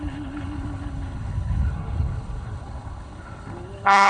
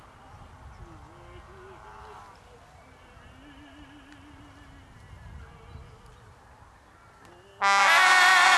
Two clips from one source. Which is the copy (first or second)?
first